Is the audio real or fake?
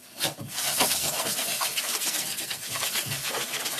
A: fake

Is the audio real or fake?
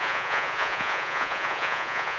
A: fake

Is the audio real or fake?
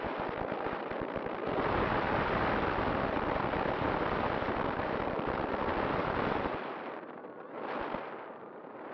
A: fake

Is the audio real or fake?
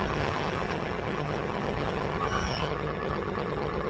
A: fake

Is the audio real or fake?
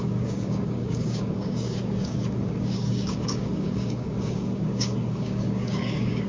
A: fake